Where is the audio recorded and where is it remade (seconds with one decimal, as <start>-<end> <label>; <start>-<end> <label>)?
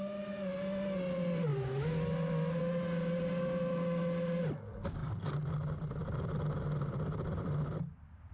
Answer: 0.0-8.3 recorded